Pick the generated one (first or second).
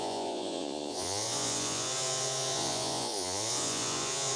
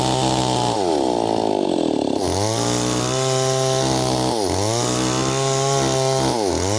first